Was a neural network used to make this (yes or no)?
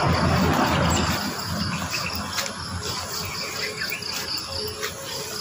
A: no